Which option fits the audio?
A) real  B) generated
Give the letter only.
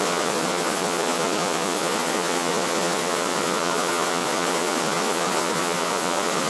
B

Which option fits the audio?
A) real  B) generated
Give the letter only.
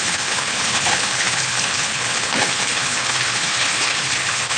B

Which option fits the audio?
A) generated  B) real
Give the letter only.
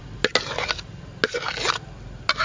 B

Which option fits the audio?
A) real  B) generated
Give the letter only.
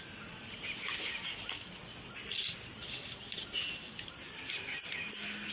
A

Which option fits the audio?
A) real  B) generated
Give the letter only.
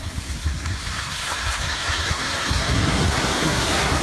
B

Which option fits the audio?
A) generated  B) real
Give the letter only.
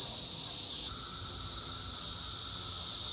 B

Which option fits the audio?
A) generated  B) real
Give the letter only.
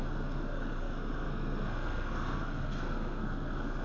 A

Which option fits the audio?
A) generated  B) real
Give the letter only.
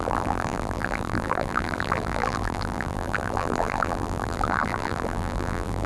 A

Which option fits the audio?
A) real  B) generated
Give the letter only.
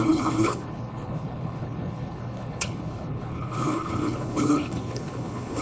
B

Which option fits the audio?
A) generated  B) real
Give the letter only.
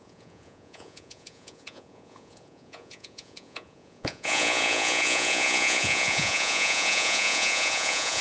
A